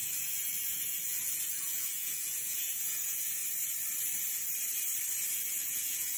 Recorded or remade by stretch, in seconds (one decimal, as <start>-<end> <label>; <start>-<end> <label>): 0.0-3.4 remade; 3.4-5.3 recorded; 5.3-6.2 remade